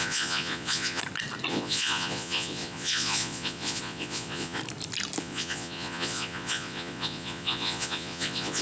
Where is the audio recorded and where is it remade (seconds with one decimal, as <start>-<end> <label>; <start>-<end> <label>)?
0.0-1.0 remade; 1.0-1.5 recorded; 1.5-4.6 remade; 4.6-5.2 recorded; 5.2-8.6 remade